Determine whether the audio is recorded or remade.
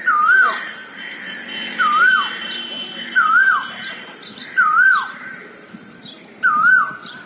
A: remade